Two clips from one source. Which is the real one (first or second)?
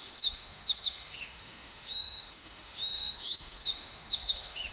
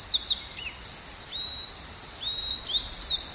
second